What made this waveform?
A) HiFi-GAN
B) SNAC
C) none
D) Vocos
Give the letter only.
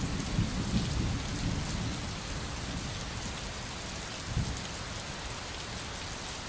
C